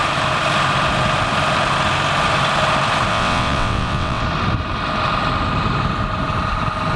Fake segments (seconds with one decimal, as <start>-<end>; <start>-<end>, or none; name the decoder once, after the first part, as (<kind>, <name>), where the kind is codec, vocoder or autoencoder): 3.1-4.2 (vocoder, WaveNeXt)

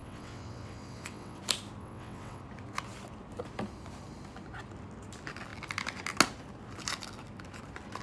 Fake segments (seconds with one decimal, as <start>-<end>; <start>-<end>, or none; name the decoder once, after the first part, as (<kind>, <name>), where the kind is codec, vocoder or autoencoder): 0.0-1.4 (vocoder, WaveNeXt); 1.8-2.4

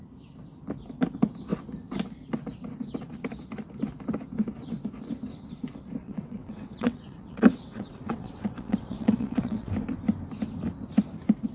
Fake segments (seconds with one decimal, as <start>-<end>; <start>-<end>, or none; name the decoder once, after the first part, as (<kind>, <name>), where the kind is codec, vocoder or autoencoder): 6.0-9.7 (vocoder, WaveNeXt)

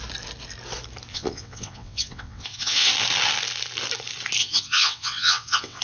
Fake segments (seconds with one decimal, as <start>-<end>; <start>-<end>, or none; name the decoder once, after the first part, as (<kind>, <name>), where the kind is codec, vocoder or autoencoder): 1.1-2.9 (vocoder, WaveNeXt); 4.4-5.8

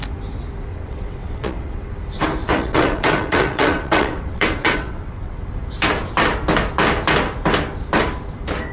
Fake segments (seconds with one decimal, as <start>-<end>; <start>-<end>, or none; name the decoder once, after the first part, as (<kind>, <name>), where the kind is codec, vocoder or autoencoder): 0.7-1.9 (vocoder, WaveNeXt); 2.4-5.4

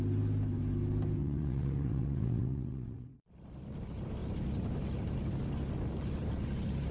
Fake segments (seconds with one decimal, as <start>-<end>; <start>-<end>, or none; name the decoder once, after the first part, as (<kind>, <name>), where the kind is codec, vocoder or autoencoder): 1.2-3.3 (vocoder, WaveNeXt)

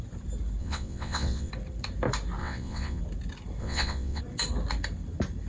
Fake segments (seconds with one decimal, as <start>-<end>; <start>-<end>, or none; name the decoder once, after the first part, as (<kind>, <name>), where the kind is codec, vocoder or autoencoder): 0.6-1.5 (vocoder, WaveNeXt); 2.4-3.0; 3.6-4.2